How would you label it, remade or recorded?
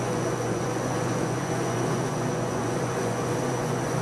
remade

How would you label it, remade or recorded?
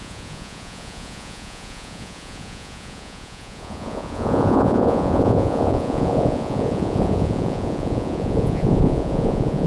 remade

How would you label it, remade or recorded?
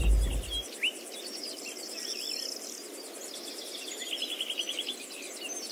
recorded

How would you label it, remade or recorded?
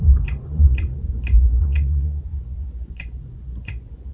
remade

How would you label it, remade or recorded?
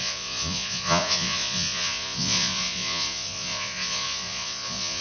remade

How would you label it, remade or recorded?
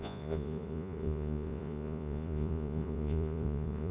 remade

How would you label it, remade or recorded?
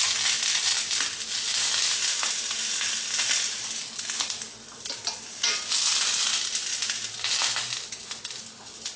recorded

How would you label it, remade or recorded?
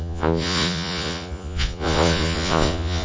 remade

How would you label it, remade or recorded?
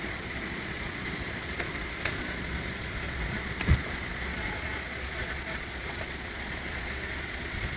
remade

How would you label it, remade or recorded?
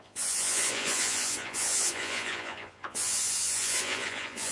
remade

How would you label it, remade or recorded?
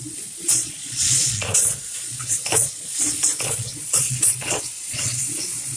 remade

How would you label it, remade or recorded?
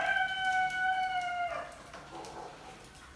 recorded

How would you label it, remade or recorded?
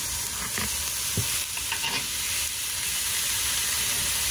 recorded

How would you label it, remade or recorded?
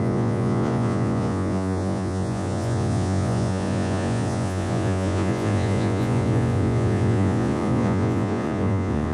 remade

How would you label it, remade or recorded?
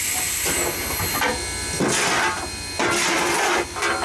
recorded